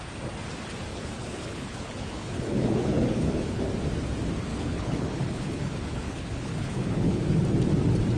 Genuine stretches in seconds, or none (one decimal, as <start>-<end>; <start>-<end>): 0.0-0.9; 3.6-4.5; 7.2-8.2